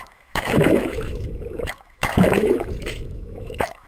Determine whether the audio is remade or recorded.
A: remade